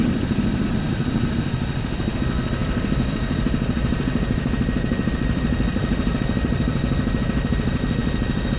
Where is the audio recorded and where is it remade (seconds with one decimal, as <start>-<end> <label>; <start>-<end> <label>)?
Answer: 0.0-8.6 remade